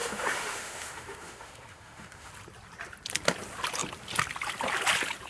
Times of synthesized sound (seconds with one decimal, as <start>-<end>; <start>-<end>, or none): 0.0-2.3